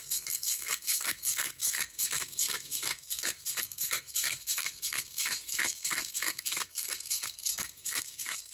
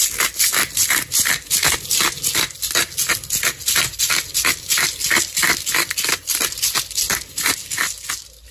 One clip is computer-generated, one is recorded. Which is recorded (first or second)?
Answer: second